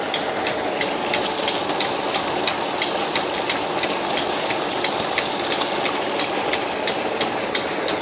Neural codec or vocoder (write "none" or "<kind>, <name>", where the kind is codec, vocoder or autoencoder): none